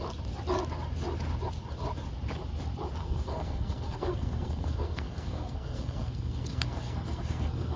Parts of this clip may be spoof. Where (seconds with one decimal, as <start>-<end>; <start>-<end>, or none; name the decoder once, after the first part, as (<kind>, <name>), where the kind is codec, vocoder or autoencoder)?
3.0-7.8 (codec, SNAC)